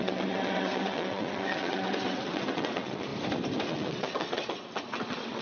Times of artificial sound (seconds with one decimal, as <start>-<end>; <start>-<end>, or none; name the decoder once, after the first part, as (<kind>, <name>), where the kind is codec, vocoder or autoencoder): 0.0-3.1 (vocoder, WaveNeXt); 3.7-5.4